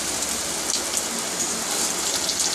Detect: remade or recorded recorded